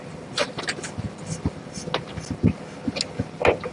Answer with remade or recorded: recorded